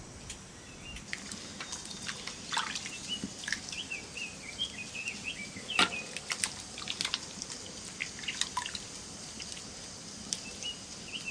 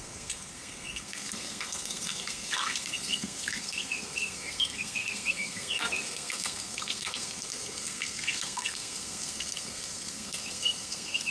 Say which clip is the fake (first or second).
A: second